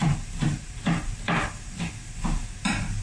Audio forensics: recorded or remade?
recorded